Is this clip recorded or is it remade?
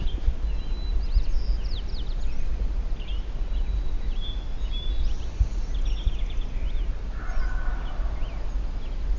recorded